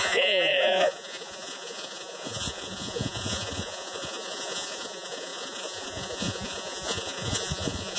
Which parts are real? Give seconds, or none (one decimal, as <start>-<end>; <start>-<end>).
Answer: none